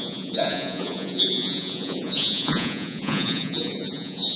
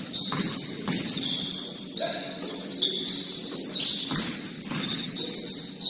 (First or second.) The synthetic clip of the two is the first